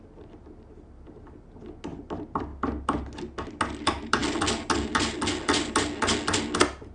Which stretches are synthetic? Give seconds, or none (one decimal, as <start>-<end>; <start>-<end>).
none